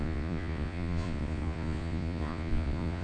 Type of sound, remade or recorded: remade